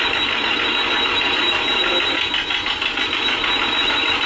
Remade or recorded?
recorded